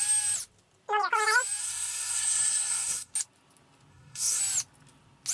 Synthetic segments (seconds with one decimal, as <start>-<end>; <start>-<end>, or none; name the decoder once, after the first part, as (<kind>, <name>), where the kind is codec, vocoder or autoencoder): 1.6-3.1 (codec, SNAC); 3.9-4.4